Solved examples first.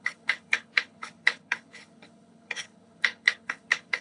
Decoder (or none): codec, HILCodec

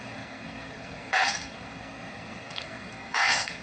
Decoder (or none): codec, SNAC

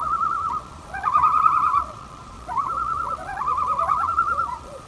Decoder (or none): vocoder, Vocos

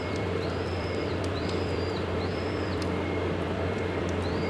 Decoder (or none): vocoder, BigVGAN v2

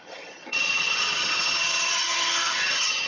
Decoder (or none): vocoder, HiFi-GAN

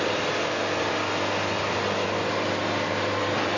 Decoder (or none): none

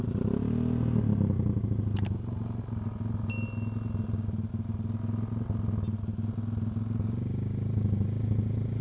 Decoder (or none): none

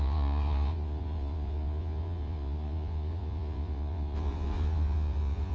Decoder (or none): vocoder, Vocos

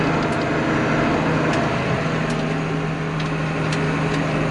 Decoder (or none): none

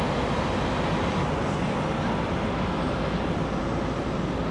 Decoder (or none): none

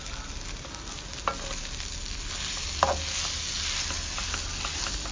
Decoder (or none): none